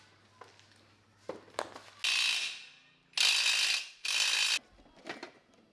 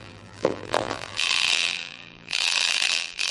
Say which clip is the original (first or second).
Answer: first